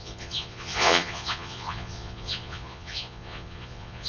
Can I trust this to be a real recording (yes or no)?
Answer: no